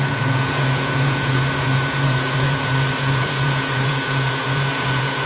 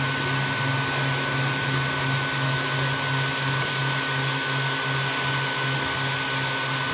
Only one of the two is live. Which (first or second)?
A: second